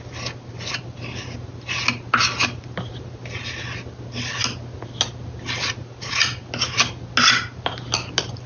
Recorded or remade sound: recorded